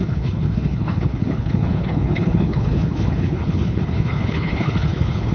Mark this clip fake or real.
fake